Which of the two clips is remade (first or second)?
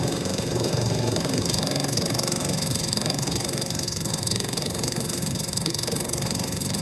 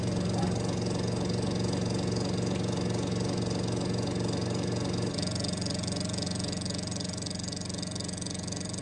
first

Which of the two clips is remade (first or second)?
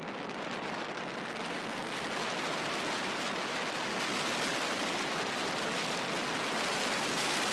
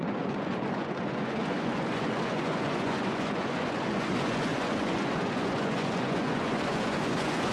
second